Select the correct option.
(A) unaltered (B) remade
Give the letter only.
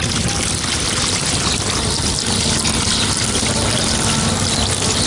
A